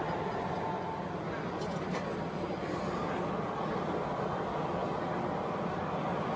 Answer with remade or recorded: recorded